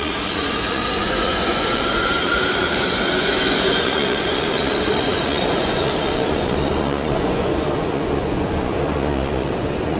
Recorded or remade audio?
remade